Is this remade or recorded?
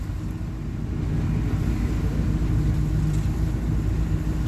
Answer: recorded